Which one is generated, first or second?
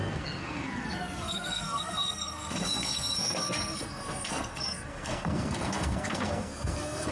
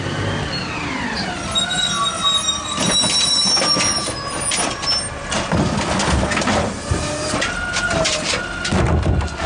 first